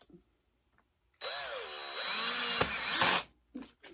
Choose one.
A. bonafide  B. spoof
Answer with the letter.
A